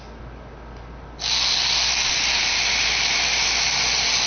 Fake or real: real